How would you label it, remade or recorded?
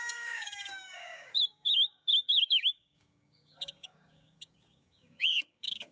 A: remade